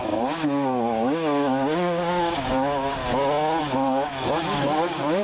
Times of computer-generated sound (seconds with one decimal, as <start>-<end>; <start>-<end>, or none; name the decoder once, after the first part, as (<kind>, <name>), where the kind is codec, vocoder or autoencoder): 0.0-3.0 (codec, DAC); 3.6-5.2